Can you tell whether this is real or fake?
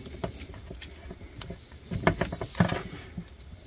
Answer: real